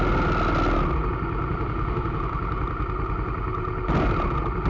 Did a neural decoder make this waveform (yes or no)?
no